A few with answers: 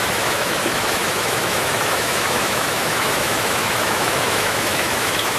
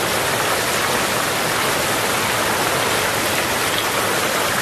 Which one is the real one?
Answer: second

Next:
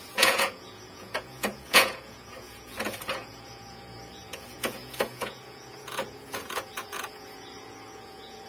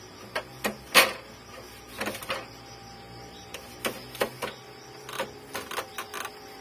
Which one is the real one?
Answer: second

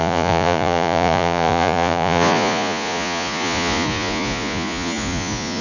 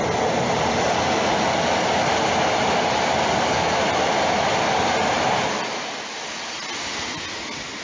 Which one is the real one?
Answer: second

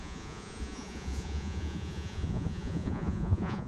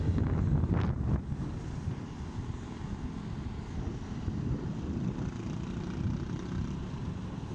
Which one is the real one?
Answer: second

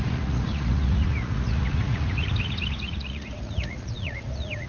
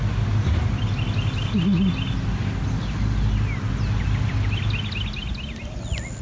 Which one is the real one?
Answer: second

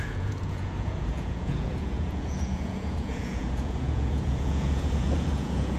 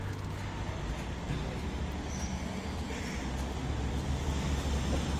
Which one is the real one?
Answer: second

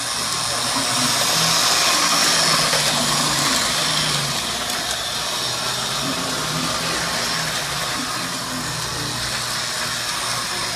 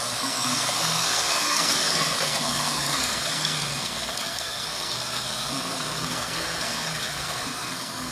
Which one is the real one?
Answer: first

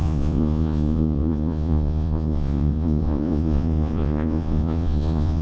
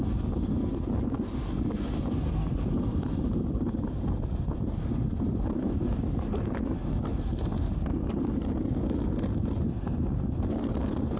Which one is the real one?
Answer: second